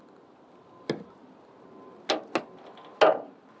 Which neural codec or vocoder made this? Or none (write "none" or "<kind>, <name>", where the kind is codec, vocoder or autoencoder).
none